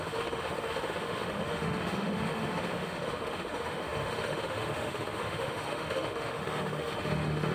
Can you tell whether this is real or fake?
fake